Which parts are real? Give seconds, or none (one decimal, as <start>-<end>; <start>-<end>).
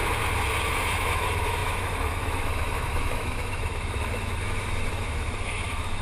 0.0-0.7